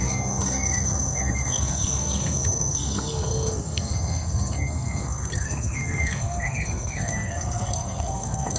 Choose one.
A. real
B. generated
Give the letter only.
B